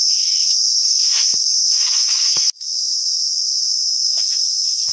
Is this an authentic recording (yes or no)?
no